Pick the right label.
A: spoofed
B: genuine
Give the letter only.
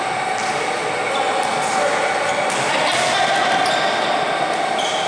B